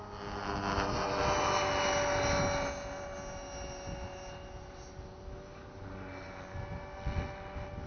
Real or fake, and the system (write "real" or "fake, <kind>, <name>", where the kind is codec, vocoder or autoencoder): real